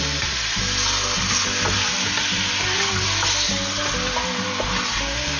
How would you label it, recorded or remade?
recorded